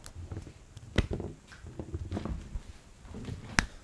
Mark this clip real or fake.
real